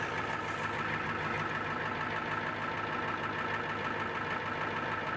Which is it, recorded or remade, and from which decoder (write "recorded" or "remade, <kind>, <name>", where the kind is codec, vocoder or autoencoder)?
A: recorded